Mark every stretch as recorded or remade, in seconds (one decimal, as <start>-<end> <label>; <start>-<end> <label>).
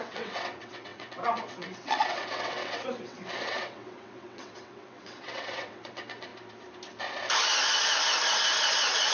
0.0-6.3 remade; 6.3-9.1 recorded